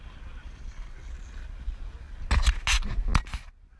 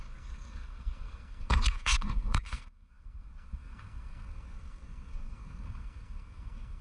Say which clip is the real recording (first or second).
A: first